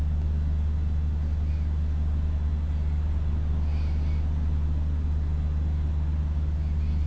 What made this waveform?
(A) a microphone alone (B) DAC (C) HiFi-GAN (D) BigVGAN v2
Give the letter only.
A